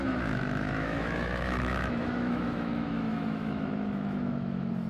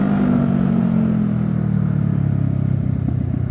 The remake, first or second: first